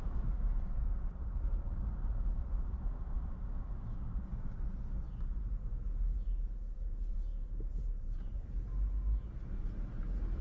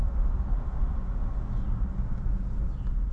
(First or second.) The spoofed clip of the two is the first